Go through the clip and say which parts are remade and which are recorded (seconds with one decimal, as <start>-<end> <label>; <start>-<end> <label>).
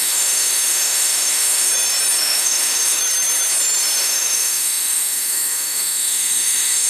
0.0-1.7 remade; 1.7-2.2 recorded; 2.2-3.0 remade; 3.0-4.0 recorded; 4.0-6.9 remade